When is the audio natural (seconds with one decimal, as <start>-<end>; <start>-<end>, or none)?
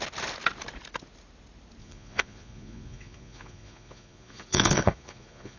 0.0-1.8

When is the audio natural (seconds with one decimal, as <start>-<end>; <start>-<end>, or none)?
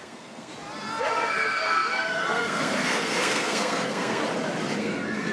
0.5-1.0; 4.2-4.8